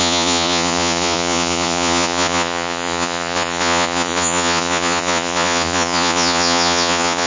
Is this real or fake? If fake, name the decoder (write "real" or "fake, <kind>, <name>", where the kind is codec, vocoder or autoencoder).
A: fake, vocoder, Vocos